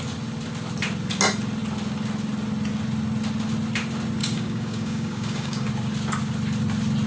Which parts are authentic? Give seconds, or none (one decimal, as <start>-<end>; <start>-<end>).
0.0-4.2; 5.7-7.1